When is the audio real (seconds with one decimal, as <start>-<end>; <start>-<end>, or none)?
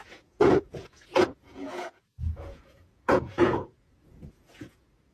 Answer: none